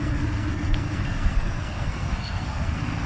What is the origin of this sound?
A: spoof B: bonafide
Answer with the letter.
A